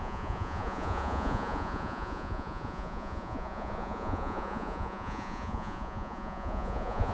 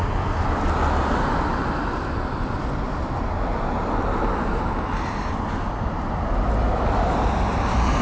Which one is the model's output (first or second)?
first